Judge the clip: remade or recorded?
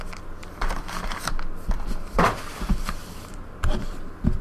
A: recorded